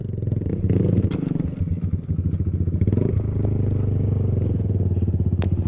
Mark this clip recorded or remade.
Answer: recorded